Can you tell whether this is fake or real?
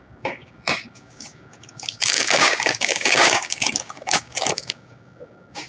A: fake